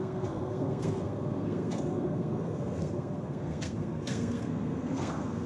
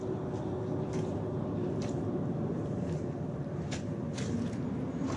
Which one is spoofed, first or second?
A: first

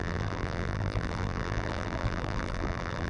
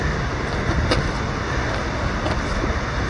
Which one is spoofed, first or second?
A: first